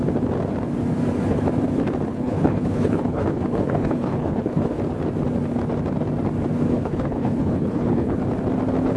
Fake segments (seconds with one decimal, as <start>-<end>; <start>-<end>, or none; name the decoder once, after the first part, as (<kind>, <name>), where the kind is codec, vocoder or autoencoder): 2.1-4.8 (codec, HILCodec); 6.7-8.2